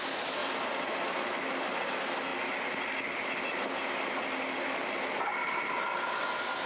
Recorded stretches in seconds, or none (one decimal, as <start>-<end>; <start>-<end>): 0.0-6.7